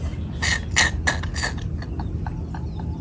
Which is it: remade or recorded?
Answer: recorded